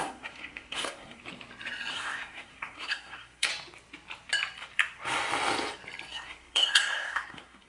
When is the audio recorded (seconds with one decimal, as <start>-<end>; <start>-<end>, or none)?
1.2-1.9; 3.5-6.1